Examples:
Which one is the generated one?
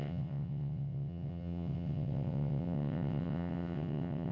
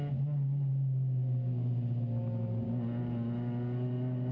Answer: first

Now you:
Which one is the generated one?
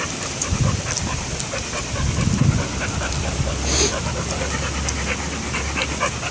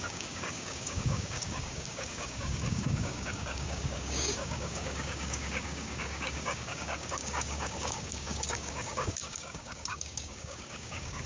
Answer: second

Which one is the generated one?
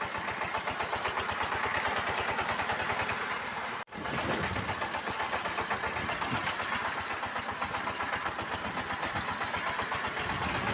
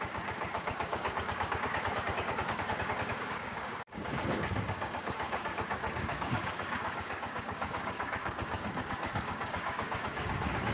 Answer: second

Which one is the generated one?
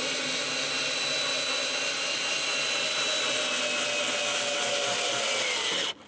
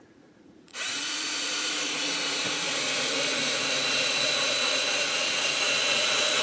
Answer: second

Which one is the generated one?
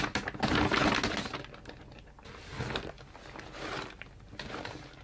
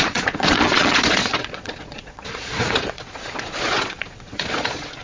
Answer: second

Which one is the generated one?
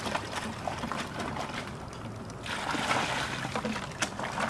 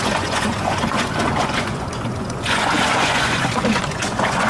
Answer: second